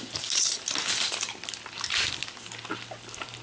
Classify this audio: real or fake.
real